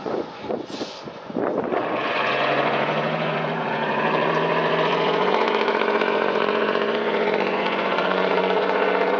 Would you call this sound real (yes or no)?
no